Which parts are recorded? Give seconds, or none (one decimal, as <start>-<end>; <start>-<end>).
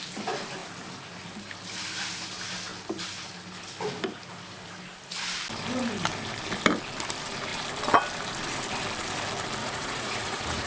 0.0-9.6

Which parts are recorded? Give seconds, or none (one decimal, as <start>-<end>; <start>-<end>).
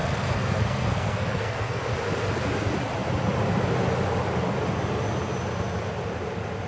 1.8-6.7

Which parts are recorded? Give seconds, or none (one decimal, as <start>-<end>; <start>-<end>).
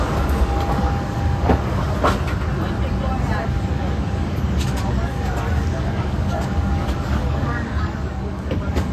1.8-3.7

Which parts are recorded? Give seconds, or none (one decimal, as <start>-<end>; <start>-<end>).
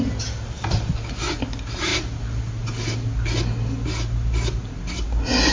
0.0-5.5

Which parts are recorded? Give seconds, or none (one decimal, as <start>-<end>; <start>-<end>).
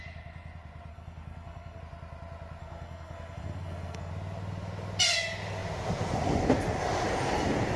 0.0-0.9; 1.8-2.6; 4.1-7.8